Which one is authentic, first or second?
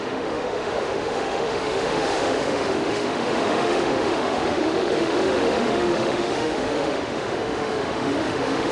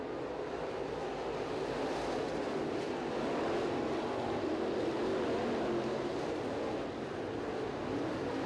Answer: second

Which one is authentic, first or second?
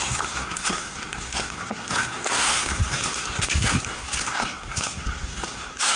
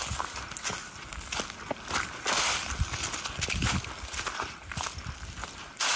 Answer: second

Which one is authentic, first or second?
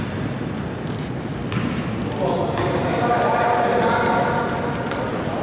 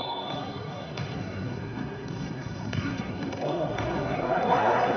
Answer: first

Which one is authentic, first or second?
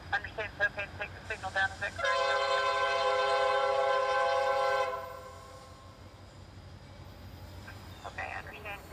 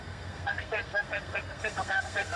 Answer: first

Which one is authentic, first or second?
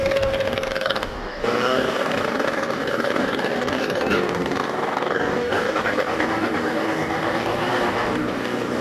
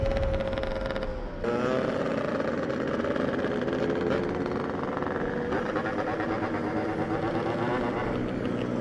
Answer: second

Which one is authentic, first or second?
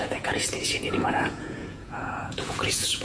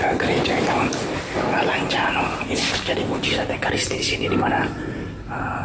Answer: second